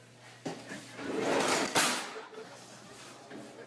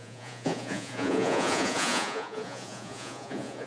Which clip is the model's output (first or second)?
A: second